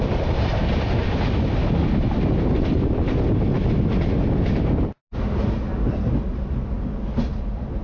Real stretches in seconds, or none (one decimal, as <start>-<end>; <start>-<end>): 0.0-7.8